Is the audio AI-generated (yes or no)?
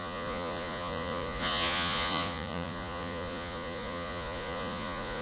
yes